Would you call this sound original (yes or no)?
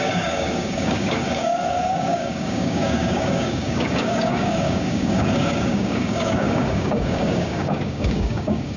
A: no